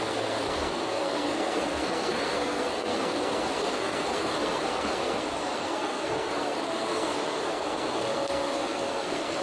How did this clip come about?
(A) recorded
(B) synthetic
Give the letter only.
B